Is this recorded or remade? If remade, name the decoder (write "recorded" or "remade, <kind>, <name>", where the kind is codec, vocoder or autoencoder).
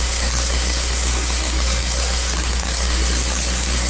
remade, codec, SNAC